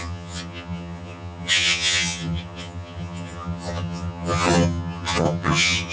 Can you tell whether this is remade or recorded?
remade